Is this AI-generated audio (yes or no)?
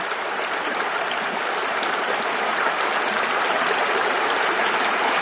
no